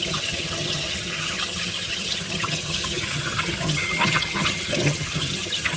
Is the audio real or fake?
fake